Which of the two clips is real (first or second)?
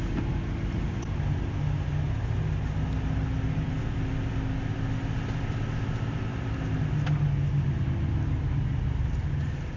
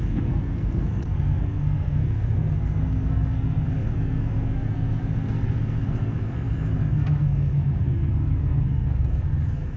first